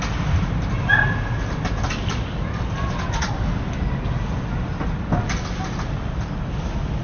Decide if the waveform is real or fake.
real